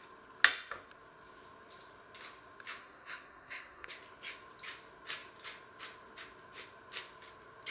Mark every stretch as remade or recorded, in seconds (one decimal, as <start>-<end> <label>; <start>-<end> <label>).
0.0-2.8 recorded; 2.8-3.9 remade; 3.9-7.7 recorded